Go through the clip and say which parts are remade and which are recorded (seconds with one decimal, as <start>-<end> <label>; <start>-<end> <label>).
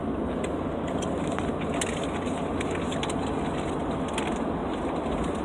0.0-5.4 recorded